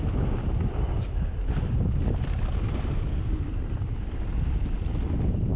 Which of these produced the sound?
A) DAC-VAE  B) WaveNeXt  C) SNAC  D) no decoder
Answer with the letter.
D